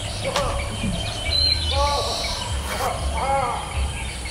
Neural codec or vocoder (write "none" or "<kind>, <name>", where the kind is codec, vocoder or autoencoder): none